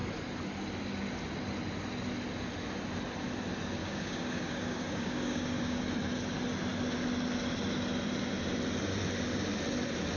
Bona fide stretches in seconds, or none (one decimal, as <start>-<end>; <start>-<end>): 0.0-3.8; 5.8-10.2